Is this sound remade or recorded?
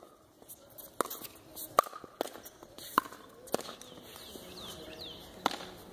recorded